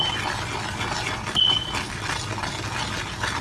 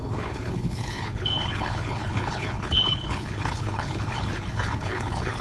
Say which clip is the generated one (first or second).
second